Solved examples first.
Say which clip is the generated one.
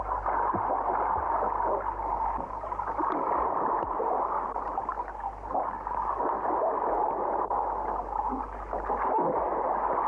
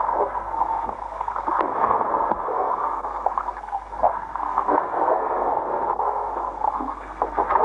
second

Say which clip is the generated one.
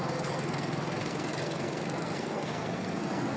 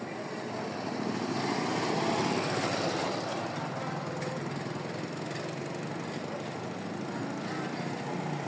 first